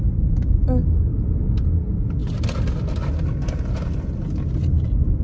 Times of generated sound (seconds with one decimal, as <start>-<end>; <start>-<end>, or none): none